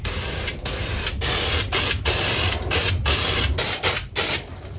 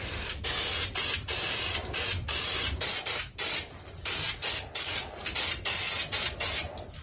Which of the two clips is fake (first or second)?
first